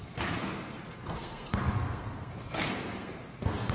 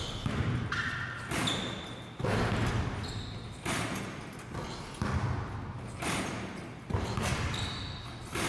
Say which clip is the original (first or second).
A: second